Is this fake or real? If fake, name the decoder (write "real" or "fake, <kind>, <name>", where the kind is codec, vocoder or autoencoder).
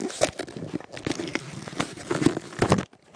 real